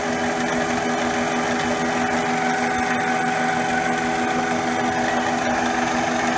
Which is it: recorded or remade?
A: recorded